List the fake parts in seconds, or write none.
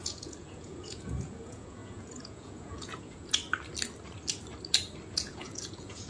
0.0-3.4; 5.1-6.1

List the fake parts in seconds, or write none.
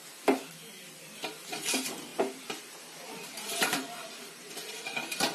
1.3-5.3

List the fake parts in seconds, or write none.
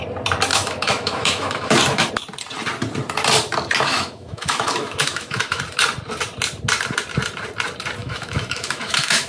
0.5-2.1; 3.9-5.6; 8.0-9.3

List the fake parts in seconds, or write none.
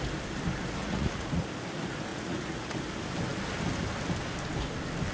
0.8-1.4; 2.1-2.7